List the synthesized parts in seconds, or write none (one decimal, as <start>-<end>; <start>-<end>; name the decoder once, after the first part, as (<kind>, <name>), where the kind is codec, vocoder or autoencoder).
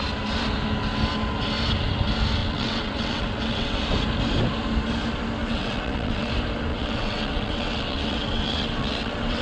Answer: 2.4-3.8 (vocoder, WaveNeXt); 5.4-6.3; 6.7-9.4